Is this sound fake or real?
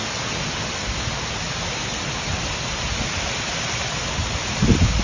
real